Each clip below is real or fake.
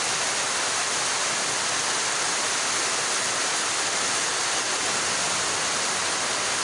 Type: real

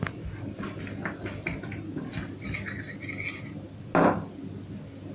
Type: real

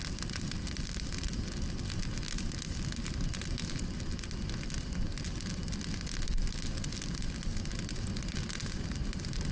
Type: real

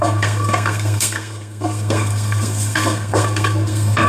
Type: fake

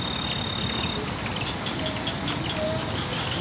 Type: real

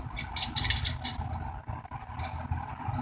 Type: real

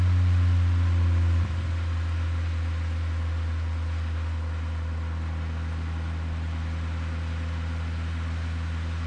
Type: real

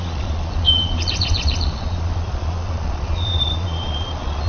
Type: fake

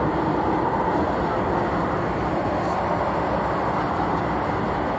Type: real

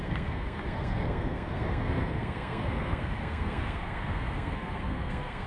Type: fake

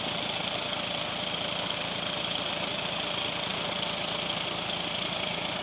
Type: real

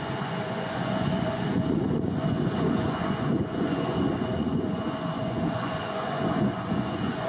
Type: fake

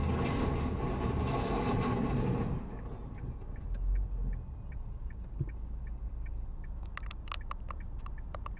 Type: real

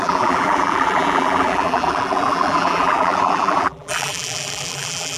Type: fake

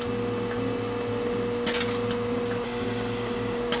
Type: real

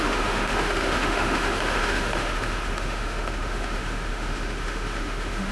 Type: fake